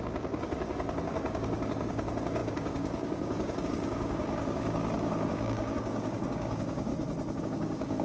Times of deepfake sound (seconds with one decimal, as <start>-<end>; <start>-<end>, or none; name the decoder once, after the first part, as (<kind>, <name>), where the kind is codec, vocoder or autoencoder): 0.0-6.9 (codec, DAC); 7.4-8.0